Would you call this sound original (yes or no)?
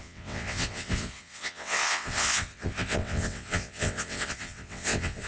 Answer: no